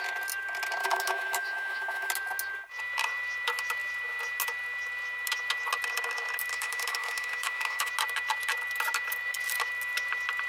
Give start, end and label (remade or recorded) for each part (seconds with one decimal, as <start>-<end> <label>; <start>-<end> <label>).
0.0-0.8 recorded; 0.8-2.1 remade; 2.1-6.5 recorded; 6.5-7.9 remade; 7.9-10.5 recorded